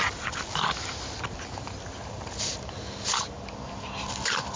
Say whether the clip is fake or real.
real